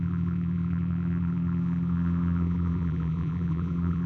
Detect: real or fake fake